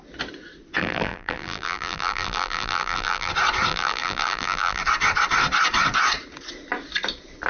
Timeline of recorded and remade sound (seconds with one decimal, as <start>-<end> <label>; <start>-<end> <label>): 0.0-0.8 recorded; 0.8-3.3 remade; 3.3-3.7 recorded; 3.7-4.8 remade; 4.8-7.5 recorded